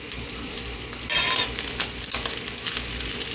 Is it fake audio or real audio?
real